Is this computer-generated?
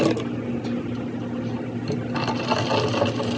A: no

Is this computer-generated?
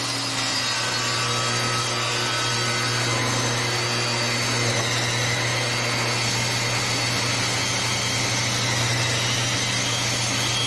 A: no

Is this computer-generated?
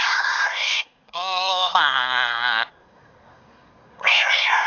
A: yes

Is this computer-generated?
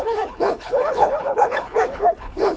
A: yes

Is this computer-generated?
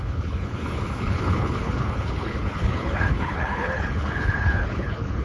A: yes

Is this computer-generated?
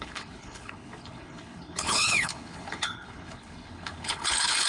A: yes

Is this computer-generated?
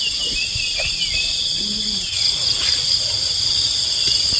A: no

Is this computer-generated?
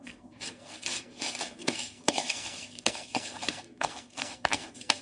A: yes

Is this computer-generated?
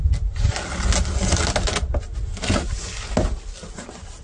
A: no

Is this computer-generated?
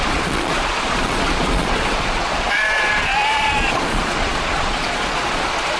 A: yes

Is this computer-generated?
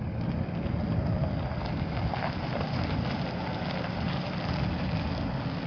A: no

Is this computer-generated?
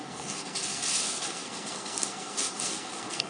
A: yes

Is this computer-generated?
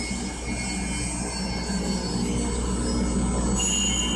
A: no